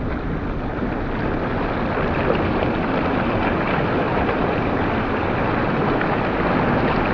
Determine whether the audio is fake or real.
real